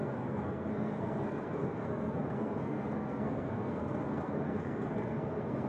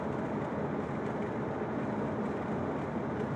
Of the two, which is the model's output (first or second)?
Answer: first